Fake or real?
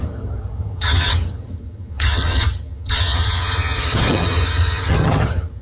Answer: fake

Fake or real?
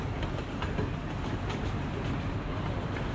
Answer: real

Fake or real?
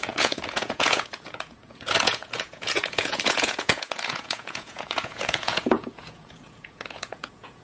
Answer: fake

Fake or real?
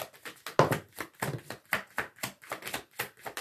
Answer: real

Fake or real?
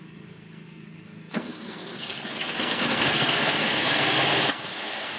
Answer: fake